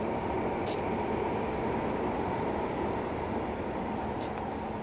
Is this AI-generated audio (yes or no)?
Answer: no